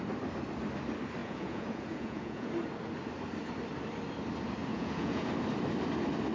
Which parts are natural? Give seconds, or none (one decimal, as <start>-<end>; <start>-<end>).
0.0-1.2; 2.5-4.7; 5.3-6.3